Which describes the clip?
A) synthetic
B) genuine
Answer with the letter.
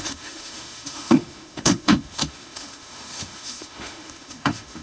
A